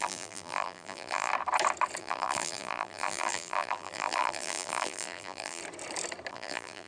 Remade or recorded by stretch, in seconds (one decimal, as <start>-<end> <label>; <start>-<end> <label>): 0.0-1.3 remade; 1.3-2.0 recorded; 2.0-5.6 remade; 5.6-6.3 recorded; 6.3-6.9 remade